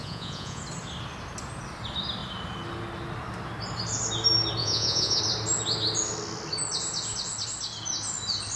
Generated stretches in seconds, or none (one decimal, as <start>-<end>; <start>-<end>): 0.0-0.6; 4.6-5.2